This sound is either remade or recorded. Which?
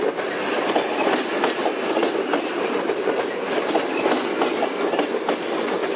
recorded